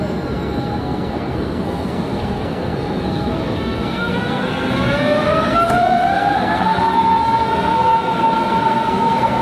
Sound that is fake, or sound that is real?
fake